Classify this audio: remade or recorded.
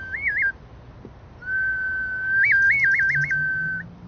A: recorded